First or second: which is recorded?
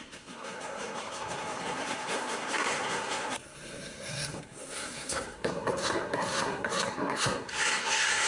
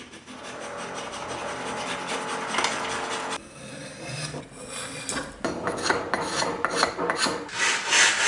second